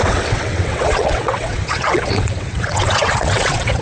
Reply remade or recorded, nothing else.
remade